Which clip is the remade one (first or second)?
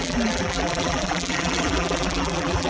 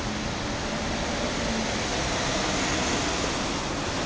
first